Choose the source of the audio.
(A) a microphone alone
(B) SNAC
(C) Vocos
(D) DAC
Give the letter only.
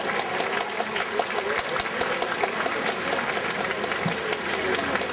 A